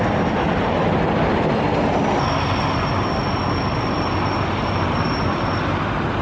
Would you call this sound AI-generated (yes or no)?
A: no